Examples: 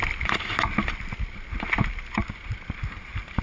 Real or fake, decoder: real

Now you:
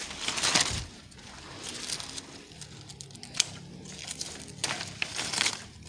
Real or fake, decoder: real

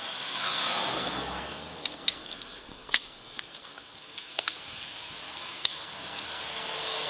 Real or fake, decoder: fake, codec, SNAC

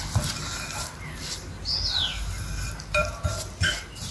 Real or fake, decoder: real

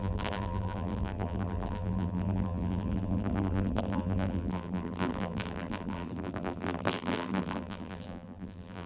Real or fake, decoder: fake, vocoder, BigVGAN v2